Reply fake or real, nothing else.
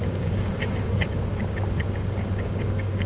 fake